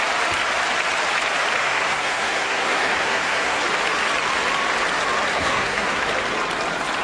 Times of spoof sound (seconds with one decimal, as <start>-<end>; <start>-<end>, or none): 1.6-3.6; 5.3-6.0